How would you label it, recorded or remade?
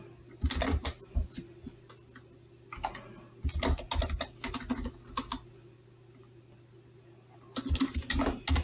recorded